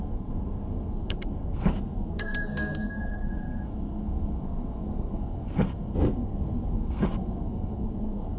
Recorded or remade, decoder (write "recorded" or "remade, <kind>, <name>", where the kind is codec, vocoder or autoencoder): remade, codec, SNAC